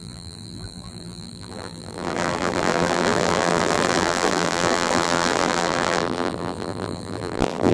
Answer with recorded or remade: remade